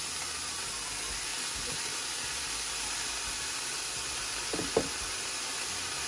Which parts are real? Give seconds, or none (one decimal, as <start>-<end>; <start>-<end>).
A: 0.0-6.1